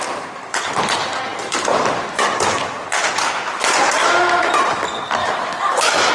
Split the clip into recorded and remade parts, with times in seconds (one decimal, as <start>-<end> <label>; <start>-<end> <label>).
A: 0.0-4.0 recorded; 4.0-4.5 remade; 4.5-5.2 recorded; 5.2-6.1 remade